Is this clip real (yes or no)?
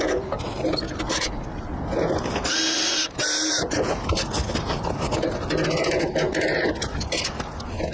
yes